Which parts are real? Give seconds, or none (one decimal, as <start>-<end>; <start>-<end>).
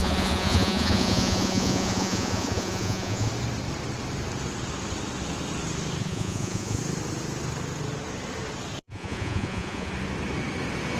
3.3-6.0; 6.8-8.8; 9.9-11.0